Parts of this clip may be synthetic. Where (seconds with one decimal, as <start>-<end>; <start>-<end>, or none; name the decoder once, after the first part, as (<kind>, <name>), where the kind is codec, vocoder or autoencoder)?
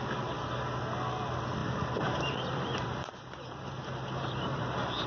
1.6-5.1 (vocoder, BigVGAN v2)